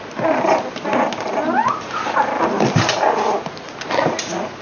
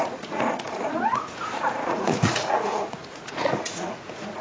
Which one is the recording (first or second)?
first